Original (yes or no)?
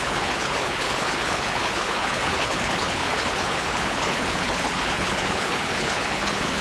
no